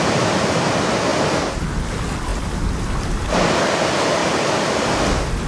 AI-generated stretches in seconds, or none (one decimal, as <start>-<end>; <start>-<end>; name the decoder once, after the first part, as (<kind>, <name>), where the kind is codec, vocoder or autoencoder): none